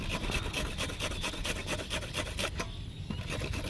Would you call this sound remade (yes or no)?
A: no